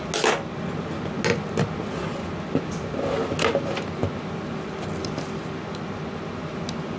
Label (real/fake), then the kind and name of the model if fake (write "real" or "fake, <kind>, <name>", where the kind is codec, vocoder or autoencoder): real